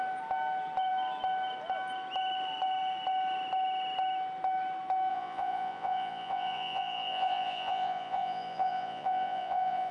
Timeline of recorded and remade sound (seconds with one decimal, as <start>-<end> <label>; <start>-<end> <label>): 0.0-5.1 recorded; 5.1-9.9 remade